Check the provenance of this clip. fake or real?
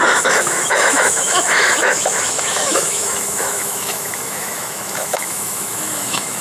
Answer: fake